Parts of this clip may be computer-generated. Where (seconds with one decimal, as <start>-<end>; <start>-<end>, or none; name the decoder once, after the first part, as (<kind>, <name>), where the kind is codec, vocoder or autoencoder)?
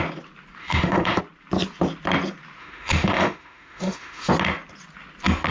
0.6-1.2 (autoencoder, DAC-VAE); 2.6-4.3